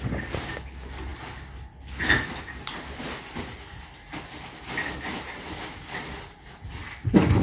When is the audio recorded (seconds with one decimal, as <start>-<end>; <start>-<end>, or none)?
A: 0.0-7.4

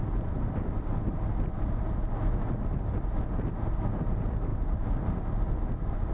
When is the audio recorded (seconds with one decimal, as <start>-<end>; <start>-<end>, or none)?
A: 0.0-6.1

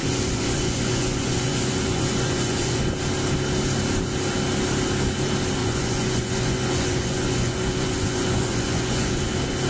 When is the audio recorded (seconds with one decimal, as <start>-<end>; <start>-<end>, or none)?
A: 2.8-5.6; 9.2-9.7